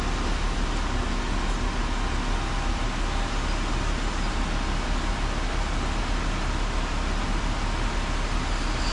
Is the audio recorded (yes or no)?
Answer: yes